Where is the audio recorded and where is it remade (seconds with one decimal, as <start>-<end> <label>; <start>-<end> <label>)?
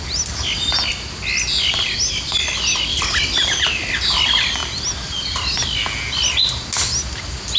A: 0.0-7.6 recorded